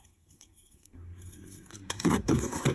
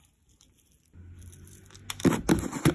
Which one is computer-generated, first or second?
first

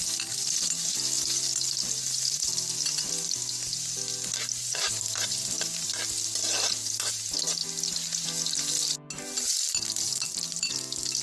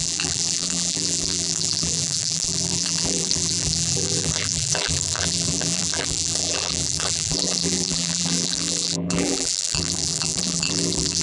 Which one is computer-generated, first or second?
second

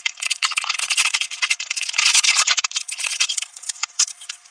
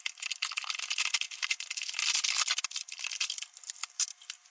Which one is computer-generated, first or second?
first